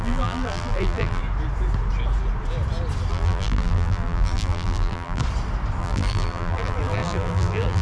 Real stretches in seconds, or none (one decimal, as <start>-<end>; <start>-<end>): 1.2-3.1; 5.2-5.8